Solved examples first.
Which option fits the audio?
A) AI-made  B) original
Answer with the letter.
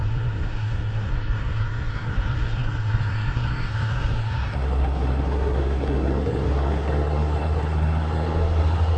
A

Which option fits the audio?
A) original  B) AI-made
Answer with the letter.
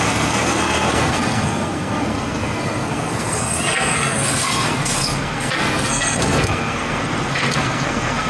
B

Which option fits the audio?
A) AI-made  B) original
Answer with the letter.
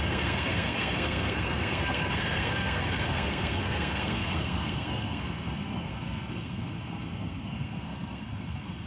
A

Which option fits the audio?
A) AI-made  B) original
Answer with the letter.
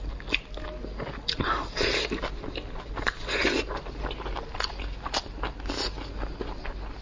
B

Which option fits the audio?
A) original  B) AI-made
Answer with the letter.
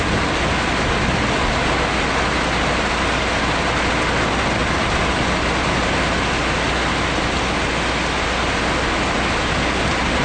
A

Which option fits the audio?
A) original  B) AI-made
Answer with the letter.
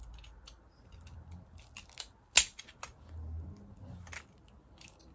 A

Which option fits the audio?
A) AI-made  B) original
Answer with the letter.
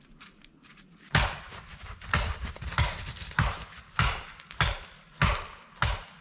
B